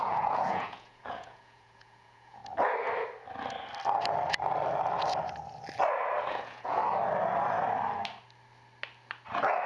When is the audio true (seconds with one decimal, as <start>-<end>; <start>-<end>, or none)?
2.4-6.3; 6.8-9.7